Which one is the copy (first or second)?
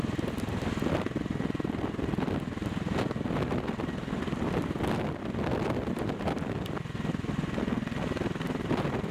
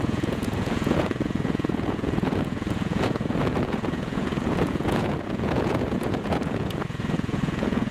second